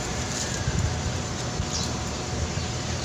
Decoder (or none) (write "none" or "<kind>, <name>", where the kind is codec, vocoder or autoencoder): vocoder, BigVGAN v2